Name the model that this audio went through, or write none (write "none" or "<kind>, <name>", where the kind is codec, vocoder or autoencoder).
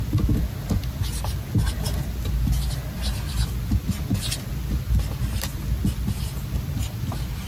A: none